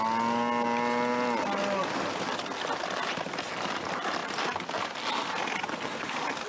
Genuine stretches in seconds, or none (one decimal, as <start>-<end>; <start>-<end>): 0.0-6.5